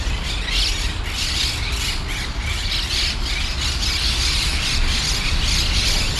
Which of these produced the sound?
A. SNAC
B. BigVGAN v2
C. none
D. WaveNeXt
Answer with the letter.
C